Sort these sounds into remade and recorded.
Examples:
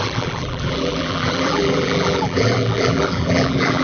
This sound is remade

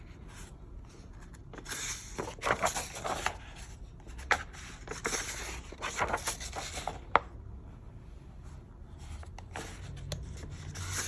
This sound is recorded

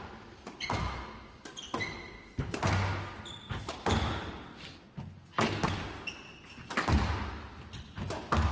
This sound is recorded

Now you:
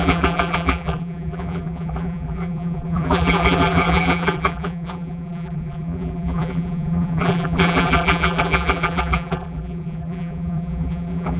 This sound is remade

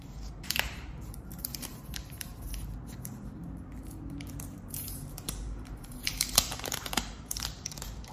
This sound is remade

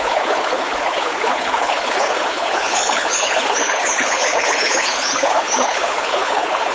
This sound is remade